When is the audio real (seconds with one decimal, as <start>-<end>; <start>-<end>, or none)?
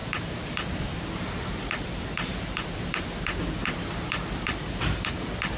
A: none